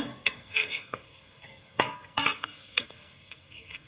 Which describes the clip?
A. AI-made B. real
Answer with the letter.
A